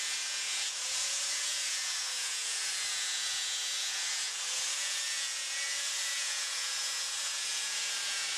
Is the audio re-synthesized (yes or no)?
yes